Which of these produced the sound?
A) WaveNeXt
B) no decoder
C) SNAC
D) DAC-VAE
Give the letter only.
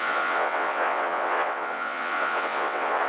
A